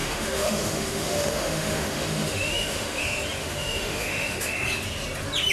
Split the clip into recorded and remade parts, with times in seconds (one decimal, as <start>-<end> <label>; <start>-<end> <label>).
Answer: 0.0-3.0 remade; 3.0-3.4 recorded; 3.4-4.5 remade; 4.5-5.5 recorded